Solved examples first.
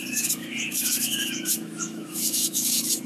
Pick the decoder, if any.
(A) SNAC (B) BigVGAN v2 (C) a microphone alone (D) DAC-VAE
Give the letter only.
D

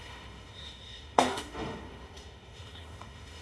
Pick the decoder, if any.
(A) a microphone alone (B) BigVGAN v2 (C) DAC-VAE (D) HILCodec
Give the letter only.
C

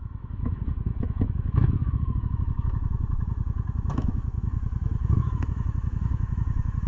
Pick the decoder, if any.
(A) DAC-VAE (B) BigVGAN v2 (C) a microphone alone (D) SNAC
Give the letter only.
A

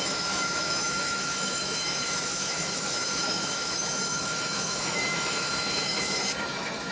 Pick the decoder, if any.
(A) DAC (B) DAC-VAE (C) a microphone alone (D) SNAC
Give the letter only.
B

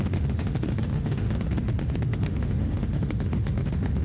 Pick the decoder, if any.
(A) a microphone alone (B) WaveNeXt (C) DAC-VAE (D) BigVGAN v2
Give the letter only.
C